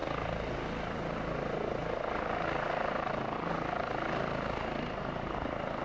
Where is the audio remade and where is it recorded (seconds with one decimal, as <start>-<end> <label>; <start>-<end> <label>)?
0.0-5.8 recorded